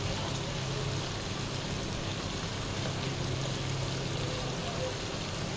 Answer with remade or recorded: recorded